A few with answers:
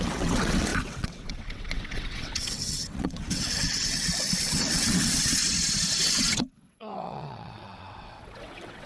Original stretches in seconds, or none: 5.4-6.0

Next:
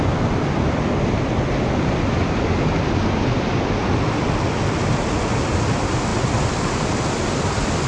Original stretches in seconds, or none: 0.0-7.9

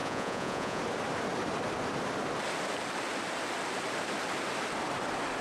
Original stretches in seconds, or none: 0.8-5.4